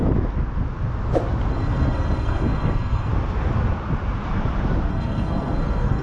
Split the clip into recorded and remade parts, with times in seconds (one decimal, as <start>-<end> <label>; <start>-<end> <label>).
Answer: 0.0-1.5 recorded; 1.5-3.1 remade; 3.1-4.9 recorded; 4.9-6.0 remade